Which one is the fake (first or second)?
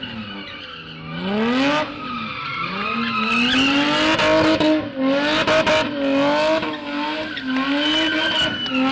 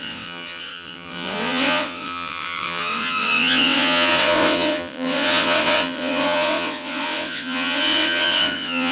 second